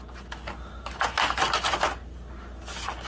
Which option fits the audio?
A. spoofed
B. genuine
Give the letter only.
B